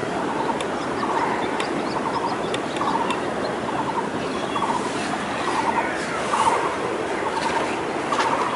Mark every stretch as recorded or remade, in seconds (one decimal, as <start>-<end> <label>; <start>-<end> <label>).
0.0-0.8 remade; 0.8-4.1 recorded; 4.1-5.2 remade; 5.2-8.6 recorded